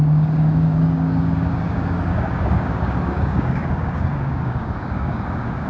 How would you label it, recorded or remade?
remade